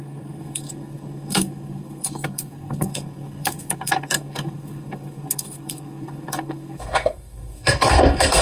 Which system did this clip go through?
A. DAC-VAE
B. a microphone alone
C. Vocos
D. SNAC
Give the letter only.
D